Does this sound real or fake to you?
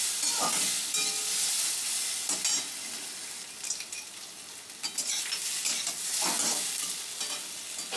real